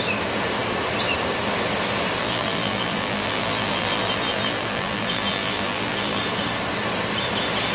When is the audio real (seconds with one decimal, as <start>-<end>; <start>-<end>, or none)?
0.0-2.2; 6.2-7.7